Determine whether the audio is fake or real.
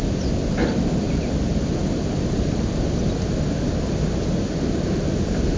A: real